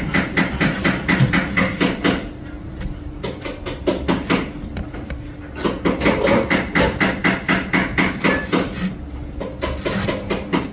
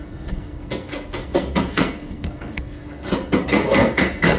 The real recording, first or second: first